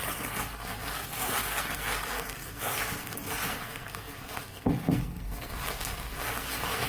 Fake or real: fake